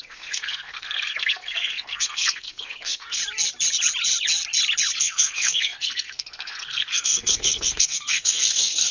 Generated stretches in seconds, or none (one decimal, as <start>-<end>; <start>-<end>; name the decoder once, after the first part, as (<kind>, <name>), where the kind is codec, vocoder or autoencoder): 0.0-3.2 (codec, SNAC); 5.0-8.9